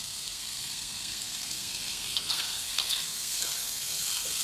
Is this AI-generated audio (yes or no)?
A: yes